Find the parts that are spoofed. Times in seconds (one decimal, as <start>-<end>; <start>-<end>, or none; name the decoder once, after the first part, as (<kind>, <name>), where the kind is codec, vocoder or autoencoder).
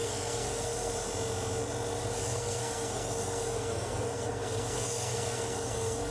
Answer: 0.0-0.9 (codec, SNAC); 2.2-6.1